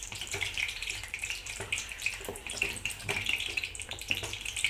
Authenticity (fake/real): fake